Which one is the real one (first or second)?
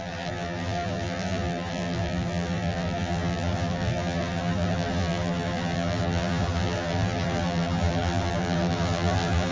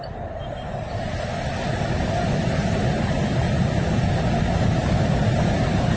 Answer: second